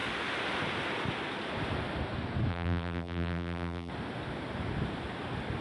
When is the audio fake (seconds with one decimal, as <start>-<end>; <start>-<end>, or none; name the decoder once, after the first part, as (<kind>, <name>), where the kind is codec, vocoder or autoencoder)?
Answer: 2.5-3.9 (vocoder, BigVGAN v2)